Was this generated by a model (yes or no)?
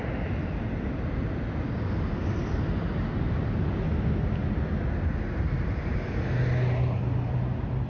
no